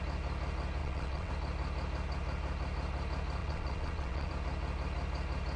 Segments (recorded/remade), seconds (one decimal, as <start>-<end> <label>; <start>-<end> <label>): 0.0-0.8 recorded; 0.8-1.3 remade; 1.3-3.4 recorded; 3.4-4.3 remade; 4.3-5.6 recorded